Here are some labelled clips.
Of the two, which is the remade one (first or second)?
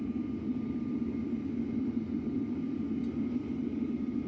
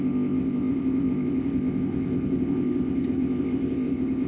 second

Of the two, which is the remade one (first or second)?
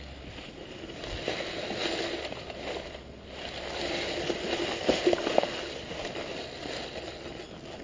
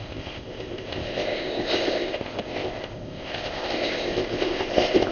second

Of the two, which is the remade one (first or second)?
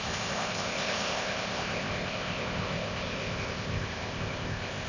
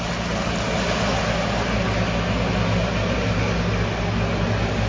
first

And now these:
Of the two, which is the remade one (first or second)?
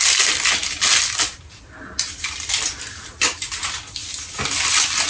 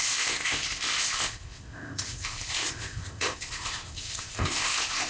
second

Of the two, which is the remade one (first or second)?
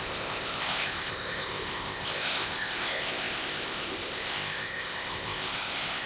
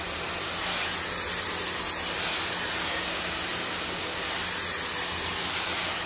first